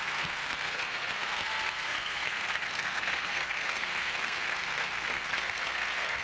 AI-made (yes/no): yes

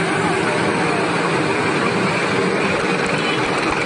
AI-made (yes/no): no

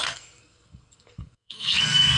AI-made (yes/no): yes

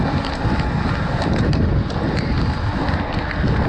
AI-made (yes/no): no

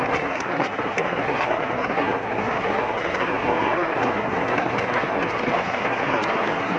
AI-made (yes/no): yes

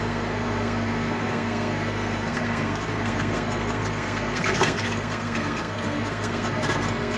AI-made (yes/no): yes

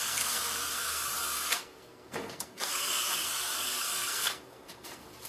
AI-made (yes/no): yes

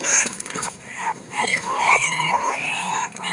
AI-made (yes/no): yes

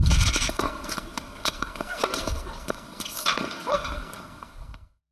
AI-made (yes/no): yes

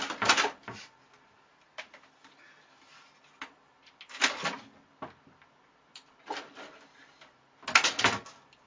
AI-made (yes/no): no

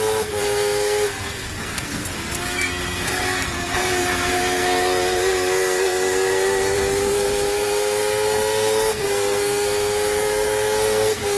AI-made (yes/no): yes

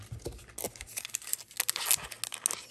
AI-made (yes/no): no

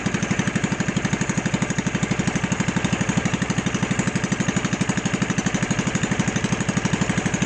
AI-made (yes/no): no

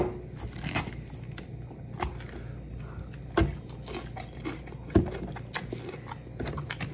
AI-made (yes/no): no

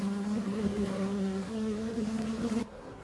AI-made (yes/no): yes